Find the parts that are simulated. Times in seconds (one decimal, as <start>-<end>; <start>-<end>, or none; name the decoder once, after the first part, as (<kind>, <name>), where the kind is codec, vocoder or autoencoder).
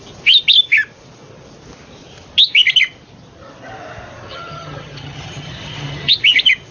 4.3-6.1 (vocoder, HiFi-GAN)